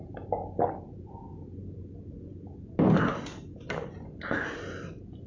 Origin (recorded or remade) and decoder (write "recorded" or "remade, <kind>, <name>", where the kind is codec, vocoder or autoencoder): recorded